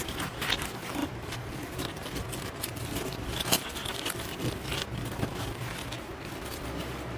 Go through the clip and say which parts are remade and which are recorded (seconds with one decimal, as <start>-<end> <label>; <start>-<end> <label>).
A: 0.0-1.0 recorded; 1.0-4.6 remade; 4.6-7.2 recorded